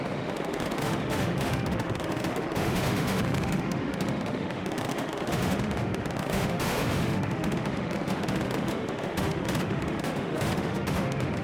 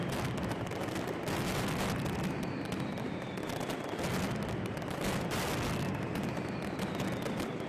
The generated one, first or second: first